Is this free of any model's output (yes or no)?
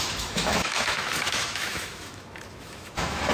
no